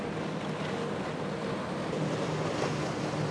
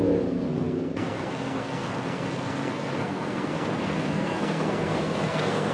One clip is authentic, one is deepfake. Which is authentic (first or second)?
first